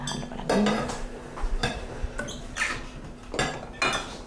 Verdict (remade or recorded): recorded